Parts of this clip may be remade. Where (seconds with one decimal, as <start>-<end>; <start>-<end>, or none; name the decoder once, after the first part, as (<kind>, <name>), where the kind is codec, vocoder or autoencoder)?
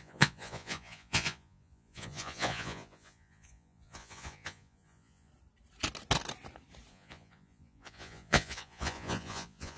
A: 0.0-5.3 (vocoder, Vocos); 6.9-9.8